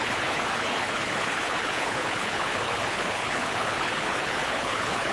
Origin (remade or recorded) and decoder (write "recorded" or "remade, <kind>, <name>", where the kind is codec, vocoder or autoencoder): remade, codec, HILCodec